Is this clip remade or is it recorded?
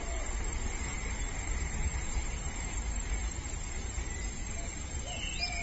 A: remade